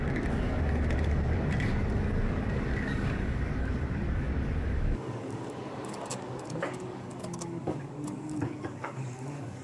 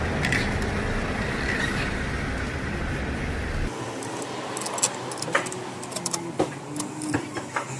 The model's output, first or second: first